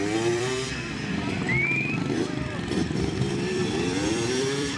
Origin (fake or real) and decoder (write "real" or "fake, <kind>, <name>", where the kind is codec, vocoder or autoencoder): fake, vocoder, BigVGAN v2